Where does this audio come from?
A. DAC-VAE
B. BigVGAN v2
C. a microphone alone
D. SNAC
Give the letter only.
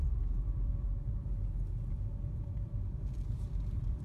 B